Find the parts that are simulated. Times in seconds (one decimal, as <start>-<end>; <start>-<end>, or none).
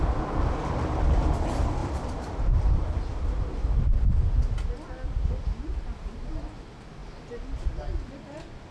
1.8-3.0